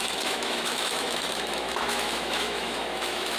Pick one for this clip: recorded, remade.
remade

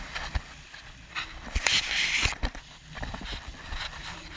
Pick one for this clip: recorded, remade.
recorded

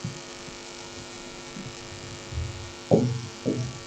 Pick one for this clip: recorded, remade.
remade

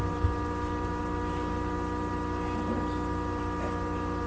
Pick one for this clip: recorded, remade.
recorded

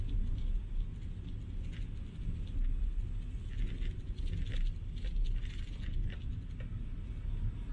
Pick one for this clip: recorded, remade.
recorded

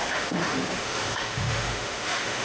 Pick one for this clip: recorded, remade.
remade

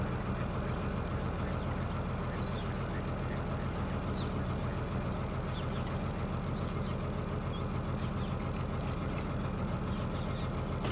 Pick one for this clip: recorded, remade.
recorded